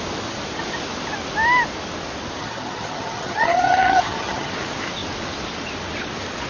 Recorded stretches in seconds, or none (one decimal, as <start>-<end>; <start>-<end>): 0.0-2.4; 4.5-6.5